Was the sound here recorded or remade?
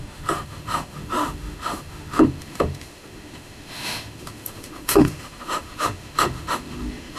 remade